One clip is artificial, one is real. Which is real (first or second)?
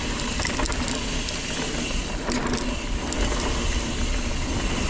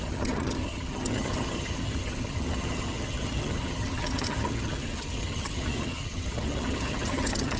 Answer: first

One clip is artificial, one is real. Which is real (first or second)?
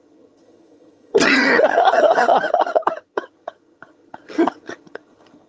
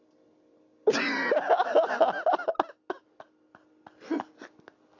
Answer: second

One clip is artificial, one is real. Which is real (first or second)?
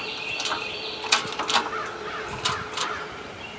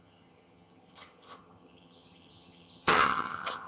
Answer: first